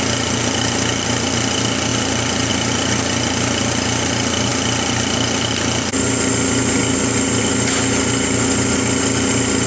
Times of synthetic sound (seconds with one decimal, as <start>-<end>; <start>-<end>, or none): none